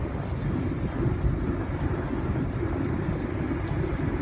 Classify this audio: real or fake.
real